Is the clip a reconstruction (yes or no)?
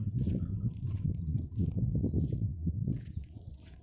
yes